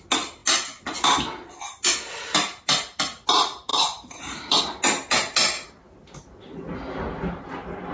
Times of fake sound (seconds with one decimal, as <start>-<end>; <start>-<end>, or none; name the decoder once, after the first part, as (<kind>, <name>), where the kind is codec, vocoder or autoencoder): 3.7-4.6 (vocoder, BigVGAN v2)